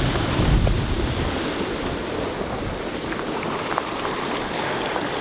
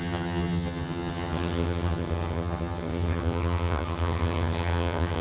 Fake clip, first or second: second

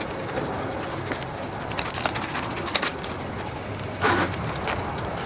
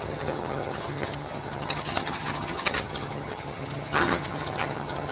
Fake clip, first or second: second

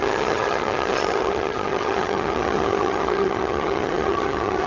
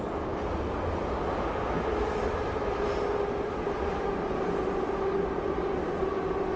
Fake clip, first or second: first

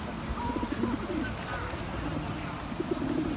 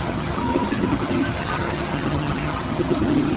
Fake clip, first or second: second